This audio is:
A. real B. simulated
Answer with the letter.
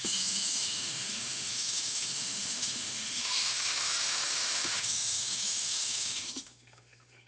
B